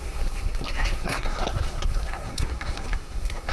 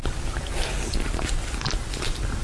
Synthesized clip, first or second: first